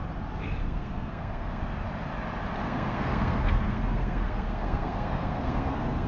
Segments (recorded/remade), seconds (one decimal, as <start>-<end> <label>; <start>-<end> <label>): 0.0-0.6 recorded; 0.6-1.6 remade; 1.6-2.6 recorded; 2.6-6.1 remade